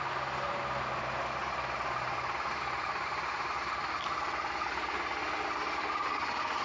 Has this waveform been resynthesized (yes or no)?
no